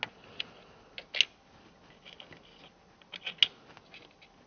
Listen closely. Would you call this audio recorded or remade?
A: recorded